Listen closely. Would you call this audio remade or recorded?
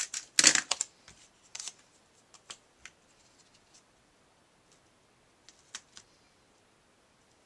recorded